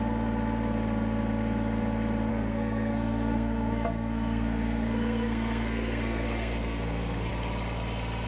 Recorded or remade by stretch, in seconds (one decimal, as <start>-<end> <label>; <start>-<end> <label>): 0.0-2.3 recorded; 2.3-7.3 remade; 7.3-8.3 recorded